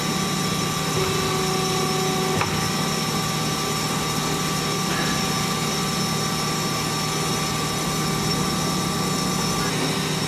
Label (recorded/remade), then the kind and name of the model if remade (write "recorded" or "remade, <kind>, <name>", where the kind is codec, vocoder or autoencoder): recorded